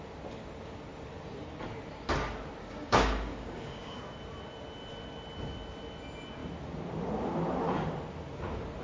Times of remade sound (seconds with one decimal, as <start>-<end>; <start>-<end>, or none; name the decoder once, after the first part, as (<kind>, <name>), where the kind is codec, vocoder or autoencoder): 2.6-4.0 (codec, DAC)